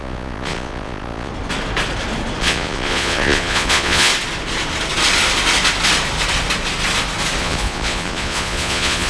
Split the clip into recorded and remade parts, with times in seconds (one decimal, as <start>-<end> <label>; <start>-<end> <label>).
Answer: 0.0-1.3 remade; 1.3-2.4 recorded; 2.4-4.1 remade; 4.1-7.4 recorded; 7.4-9.1 remade